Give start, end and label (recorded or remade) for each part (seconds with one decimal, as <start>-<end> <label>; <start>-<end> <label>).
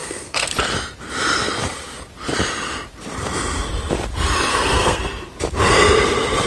0.0-0.5 remade; 0.5-4.5 recorded; 4.5-5.0 remade; 5.0-6.5 recorded